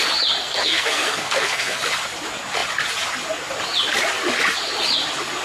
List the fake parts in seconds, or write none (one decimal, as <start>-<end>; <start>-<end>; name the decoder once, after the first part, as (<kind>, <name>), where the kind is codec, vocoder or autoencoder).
0.4-1.8 (codec, SNAC)